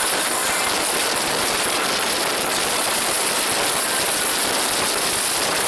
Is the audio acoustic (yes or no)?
yes